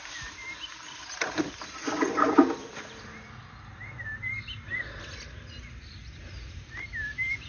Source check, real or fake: real